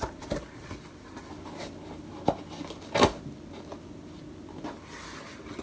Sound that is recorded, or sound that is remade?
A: recorded